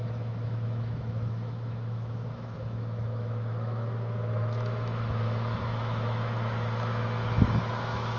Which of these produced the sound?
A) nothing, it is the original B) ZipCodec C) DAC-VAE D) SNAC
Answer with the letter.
C